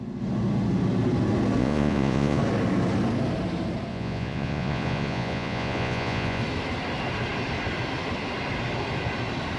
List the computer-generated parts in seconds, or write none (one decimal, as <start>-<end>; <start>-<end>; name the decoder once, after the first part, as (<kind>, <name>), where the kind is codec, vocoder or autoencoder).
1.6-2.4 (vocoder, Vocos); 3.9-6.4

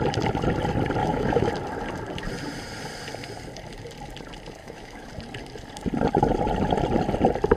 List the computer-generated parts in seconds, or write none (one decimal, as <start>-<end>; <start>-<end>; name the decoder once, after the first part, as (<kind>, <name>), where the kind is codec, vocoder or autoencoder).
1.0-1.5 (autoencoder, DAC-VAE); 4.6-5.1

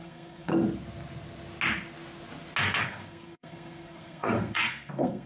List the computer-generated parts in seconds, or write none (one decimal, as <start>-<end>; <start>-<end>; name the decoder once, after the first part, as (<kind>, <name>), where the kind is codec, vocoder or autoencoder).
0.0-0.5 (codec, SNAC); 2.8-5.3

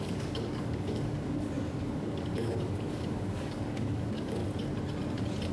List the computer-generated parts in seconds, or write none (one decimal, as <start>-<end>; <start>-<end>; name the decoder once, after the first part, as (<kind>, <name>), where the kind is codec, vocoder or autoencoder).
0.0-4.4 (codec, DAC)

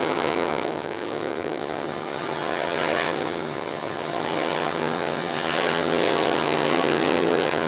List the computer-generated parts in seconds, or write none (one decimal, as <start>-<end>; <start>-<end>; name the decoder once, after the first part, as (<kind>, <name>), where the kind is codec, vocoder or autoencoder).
0.0-7.7 (vocoder, HiFi-GAN)

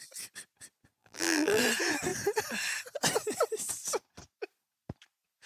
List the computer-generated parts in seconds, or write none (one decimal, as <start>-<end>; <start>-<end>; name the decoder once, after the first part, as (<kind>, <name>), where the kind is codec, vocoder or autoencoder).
1.0-1.6 (vocoder, BigVGAN v2)